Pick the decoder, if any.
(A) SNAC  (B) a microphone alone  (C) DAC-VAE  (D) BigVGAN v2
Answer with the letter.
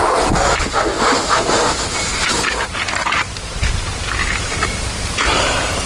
B